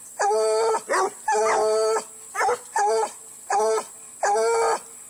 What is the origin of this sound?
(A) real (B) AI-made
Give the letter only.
A